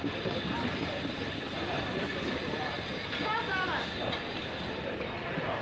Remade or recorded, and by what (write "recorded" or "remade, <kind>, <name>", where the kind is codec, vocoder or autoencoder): recorded